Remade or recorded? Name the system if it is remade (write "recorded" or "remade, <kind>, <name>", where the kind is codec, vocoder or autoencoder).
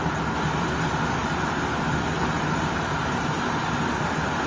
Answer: recorded